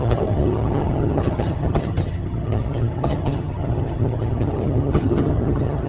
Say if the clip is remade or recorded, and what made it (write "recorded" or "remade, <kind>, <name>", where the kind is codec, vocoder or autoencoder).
remade, vocoder, HiFi-GAN